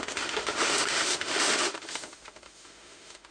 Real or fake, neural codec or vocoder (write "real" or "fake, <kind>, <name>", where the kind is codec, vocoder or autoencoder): fake, autoencoder, DAC-VAE